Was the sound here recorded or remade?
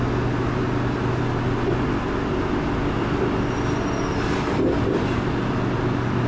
recorded